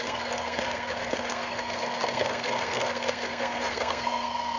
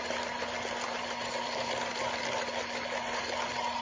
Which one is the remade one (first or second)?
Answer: first